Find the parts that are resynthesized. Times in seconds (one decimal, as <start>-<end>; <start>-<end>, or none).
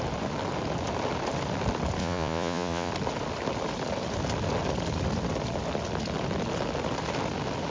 2.0-2.9